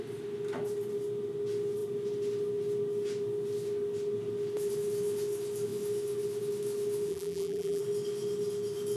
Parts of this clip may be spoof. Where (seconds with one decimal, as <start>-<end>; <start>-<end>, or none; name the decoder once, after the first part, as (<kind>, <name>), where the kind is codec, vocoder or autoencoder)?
7.1-7.8 (vocoder, BigVGAN v2)